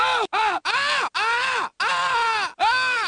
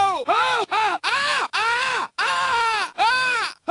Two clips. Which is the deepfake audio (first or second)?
second